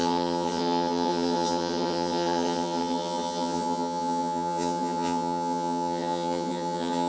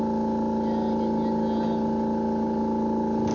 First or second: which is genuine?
second